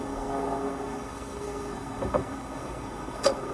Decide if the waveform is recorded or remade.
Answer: remade